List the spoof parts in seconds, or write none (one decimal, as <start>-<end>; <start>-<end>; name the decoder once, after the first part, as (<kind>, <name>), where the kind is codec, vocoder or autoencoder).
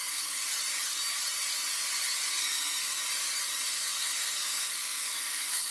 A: 0.0-0.5 (codec, SNAC); 2.3-3.0; 3.7-5.7